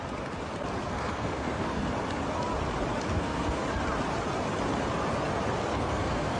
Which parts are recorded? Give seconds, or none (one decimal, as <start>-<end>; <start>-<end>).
0.0-0.8; 1.9-3.1; 3.6-5.7